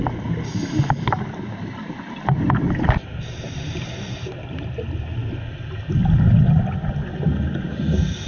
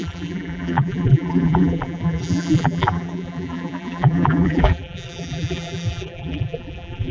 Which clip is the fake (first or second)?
second